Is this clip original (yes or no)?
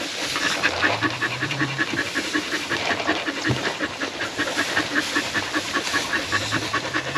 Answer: no